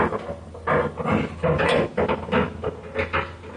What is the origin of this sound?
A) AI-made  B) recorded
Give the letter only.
B